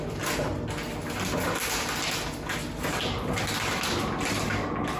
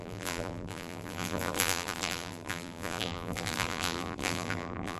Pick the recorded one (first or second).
first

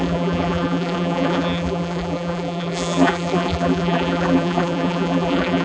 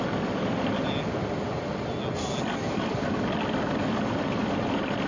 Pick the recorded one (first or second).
second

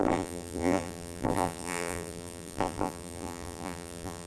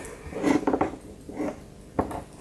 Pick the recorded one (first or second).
second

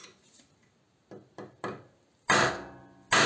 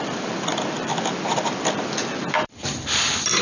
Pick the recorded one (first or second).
first